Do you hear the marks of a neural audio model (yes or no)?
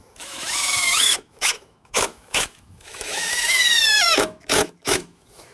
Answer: yes